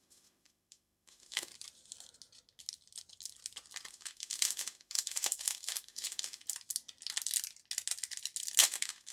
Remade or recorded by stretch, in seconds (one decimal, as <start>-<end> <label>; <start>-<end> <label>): 0.0-1.5 remade; 1.5-3.9 recorded; 3.9-6.4 remade; 6.4-8.6 recorded; 8.6-9.1 remade